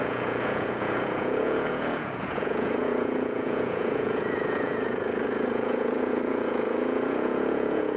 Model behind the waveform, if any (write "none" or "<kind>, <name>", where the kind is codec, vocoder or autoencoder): vocoder, Vocos